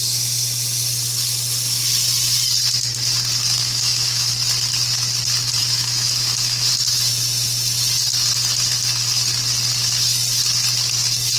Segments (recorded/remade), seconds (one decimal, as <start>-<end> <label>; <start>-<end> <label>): 0.0-3.6 recorded; 3.6-4.3 remade; 4.3-5.6 recorded; 5.6-6.7 remade; 6.7-11.4 recorded